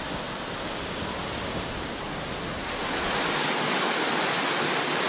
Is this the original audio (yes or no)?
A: yes